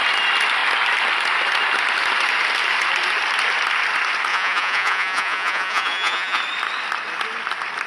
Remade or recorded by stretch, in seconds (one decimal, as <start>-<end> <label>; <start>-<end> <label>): 0.0-4.3 recorded; 4.3-6.4 remade; 6.4-7.9 recorded